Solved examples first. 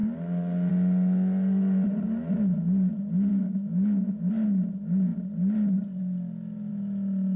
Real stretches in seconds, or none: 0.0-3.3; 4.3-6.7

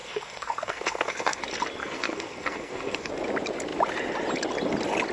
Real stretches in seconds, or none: 1.4-1.8; 3.1-5.1

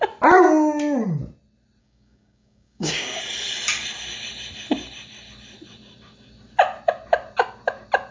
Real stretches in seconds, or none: 0.0-1.8; 3.2-8.1